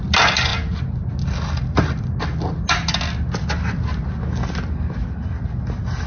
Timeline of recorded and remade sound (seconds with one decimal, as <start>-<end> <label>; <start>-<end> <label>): 0.0-6.1 recorded